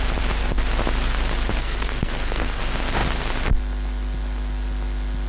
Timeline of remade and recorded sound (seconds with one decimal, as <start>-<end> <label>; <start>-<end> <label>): 0.0-1.6 recorded; 1.6-2.6 remade; 2.6-5.3 recorded